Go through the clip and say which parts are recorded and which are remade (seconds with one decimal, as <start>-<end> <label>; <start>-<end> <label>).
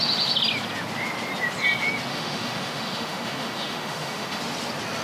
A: 0.0-2.1 recorded; 2.1-4.4 remade; 4.4-5.0 recorded